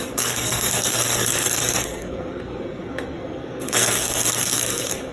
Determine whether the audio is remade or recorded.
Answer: remade